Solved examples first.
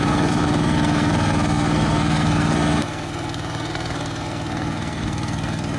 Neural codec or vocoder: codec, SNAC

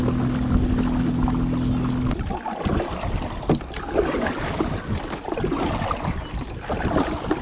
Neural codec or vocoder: none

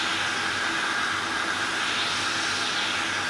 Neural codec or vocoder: none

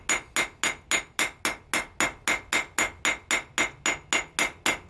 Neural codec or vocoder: none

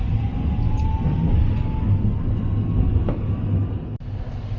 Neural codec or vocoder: none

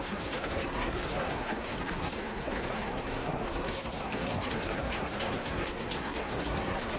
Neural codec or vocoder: codec, SNAC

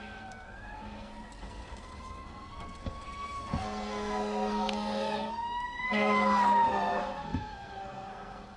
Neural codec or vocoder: codec, SNAC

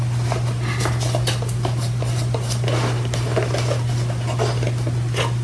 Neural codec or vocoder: none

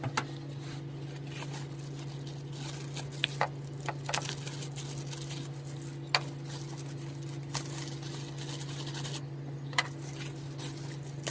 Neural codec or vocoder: none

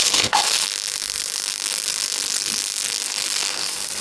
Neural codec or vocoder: codec, SNAC